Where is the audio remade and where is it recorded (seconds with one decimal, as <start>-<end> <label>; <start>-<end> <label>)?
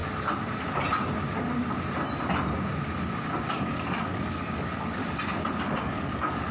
0.0-3.5 recorded; 3.5-5.0 remade; 5.0-5.6 recorded; 5.6-6.5 remade